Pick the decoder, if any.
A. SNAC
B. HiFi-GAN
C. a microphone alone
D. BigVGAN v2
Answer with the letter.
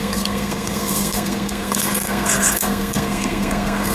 A